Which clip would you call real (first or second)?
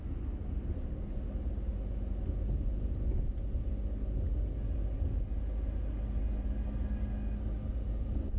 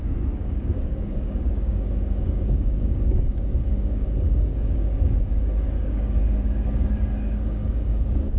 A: first